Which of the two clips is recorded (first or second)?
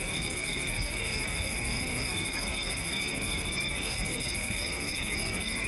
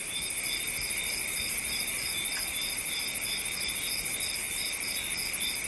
second